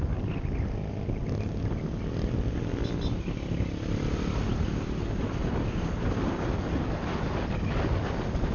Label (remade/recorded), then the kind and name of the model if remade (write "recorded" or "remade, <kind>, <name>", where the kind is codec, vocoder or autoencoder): recorded